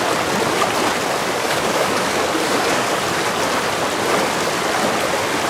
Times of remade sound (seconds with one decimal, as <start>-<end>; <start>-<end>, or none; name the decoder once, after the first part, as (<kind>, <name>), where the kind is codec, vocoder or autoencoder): 1.2-3.0 (codec, DAC)